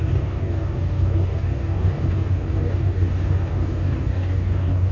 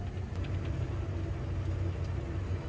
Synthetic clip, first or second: first